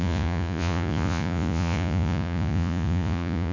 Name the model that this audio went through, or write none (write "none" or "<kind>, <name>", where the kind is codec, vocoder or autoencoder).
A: vocoder, Vocos